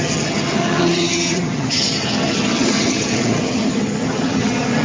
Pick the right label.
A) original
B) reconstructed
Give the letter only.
B